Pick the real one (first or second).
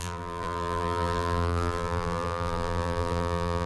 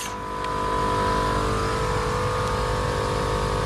second